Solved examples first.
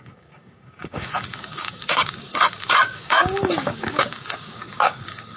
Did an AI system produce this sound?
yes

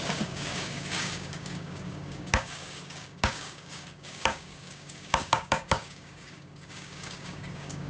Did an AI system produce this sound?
yes